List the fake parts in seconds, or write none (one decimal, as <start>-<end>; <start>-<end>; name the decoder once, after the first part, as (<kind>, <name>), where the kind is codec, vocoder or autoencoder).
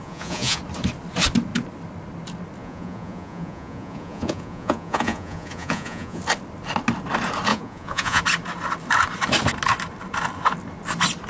0.0-0.6 (vocoder, Vocos); 2.6-6.2; 7.5-8.2